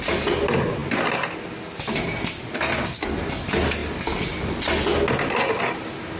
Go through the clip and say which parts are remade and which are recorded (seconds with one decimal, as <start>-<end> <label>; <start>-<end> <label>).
0.0-6.2 recorded